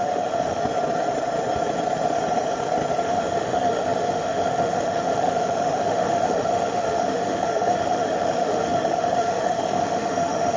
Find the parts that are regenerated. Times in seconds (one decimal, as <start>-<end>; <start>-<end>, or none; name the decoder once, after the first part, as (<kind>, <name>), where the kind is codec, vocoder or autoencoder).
0.0-0.6 (autoencoder, DAC-VAE); 3.0-10.6